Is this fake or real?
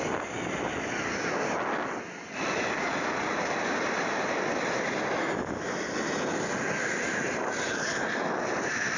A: real